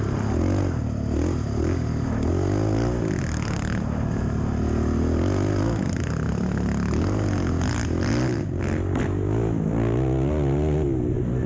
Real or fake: real